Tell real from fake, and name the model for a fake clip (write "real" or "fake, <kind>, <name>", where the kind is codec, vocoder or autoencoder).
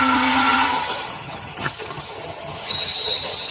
fake, vocoder, HiFi-GAN